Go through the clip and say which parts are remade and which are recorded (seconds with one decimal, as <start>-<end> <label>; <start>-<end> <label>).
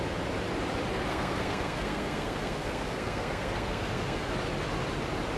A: 0.0-1.1 recorded; 1.1-4.3 remade; 4.3-5.4 recorded